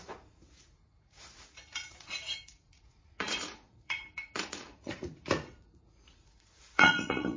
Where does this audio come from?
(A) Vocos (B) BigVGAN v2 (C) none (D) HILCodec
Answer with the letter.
A